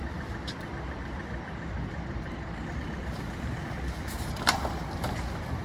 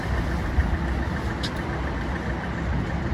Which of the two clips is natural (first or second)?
second